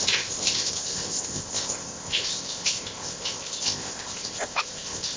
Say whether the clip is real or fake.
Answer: fake